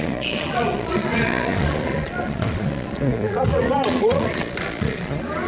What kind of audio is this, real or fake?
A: fake